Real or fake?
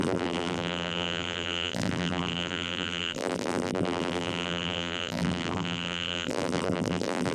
fake